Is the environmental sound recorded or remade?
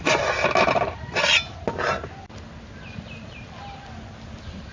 recorded